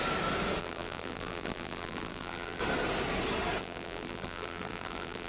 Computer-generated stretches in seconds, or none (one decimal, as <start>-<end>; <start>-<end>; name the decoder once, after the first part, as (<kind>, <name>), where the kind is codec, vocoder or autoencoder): 0.6-2.6 (vocoder, BigVGAN v2); 3.6-5.3